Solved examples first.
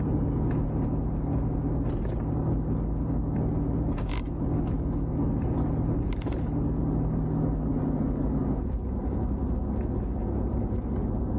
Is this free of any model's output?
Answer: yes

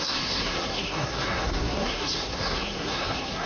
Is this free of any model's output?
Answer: no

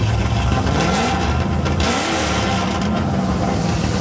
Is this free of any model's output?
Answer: yes